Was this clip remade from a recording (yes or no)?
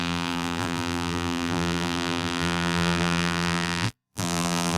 yes